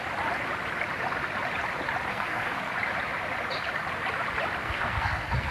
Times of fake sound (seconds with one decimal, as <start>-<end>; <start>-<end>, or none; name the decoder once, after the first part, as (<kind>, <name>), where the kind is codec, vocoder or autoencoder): 2.1-2.7 (codec, SNAC); 4.6-5.5